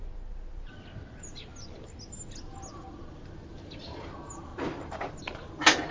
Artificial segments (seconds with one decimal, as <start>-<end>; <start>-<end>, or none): none